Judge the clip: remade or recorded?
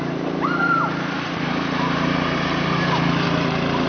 remade